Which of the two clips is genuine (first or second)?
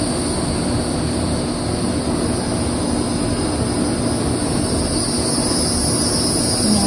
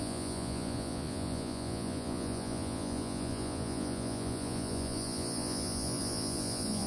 first